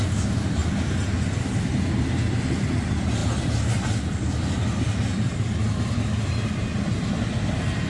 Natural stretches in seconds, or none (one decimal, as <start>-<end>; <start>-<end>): 0.0-7.9